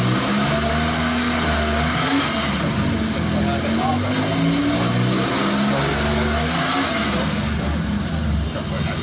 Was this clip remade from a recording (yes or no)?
no